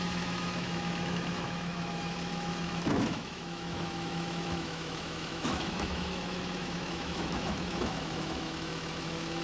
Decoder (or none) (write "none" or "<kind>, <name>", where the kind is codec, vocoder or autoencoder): autoencoder, DAC-VAE